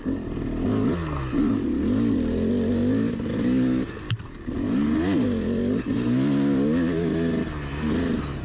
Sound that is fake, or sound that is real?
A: real